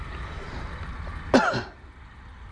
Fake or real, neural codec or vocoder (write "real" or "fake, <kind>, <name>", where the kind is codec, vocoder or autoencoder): real